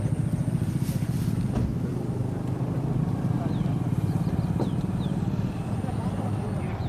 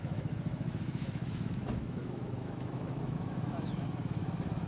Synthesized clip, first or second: second